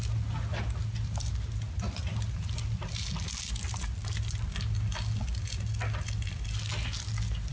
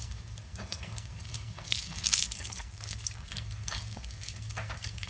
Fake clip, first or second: second